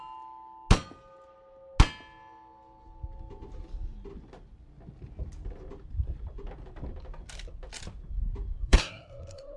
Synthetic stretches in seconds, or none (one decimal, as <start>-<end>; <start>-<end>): 8.6-9.6